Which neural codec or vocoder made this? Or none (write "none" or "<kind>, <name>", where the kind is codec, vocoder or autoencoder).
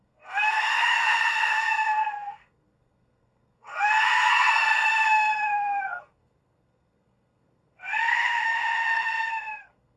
codec, SNAC